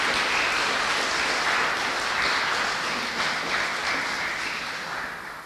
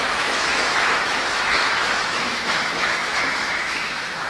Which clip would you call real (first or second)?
first